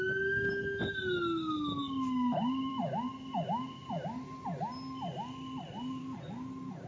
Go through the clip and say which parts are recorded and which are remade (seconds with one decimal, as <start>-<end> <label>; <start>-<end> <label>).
0.0-6.9 recorded